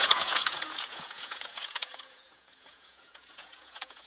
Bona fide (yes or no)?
no